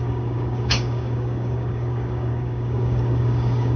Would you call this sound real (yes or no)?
no